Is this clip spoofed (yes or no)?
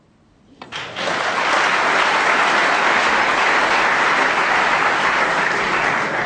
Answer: no